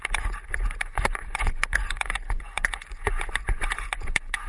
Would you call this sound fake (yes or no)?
yes